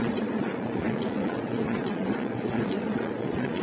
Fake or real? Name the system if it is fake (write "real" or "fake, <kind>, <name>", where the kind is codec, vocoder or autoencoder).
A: fake, vocoder, Vocos